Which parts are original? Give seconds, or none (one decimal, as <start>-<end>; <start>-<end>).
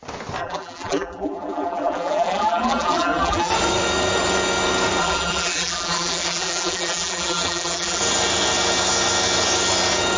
0.0-0.4; 3.5-5.0; 8.0-10.2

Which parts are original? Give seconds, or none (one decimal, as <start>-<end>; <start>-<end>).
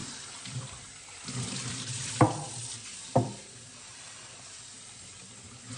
2.2-2.6; 3.7-5.8